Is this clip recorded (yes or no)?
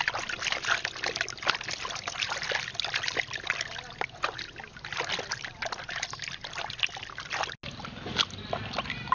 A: yes